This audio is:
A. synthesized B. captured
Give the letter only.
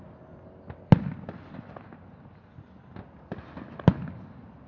B